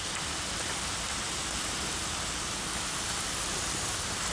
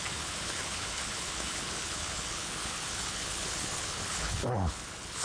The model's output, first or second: second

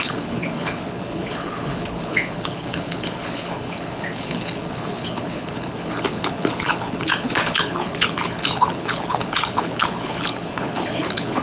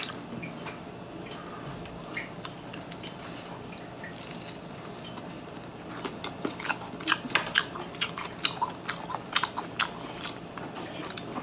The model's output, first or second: first